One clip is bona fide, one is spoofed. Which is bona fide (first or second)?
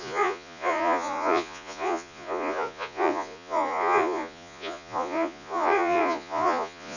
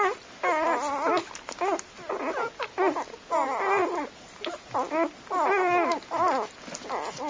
second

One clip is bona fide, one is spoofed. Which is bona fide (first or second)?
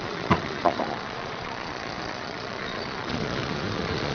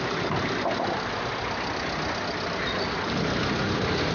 second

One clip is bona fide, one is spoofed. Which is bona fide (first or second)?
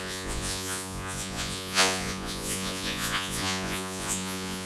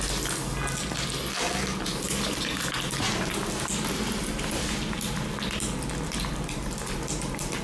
second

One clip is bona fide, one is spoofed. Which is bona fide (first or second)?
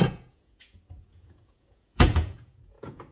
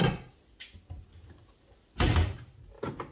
second